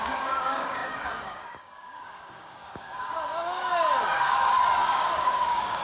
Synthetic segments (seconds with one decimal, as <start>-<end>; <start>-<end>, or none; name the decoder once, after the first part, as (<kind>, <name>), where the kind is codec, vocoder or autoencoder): 0.0-5.8 (codec, DAC)